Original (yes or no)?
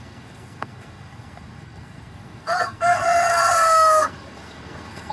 no